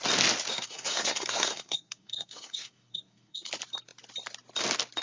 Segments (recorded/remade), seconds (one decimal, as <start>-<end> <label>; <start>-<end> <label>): 0.0-0.5 recorded; 0.5-3.5 remade; 3.5-5.0 recorded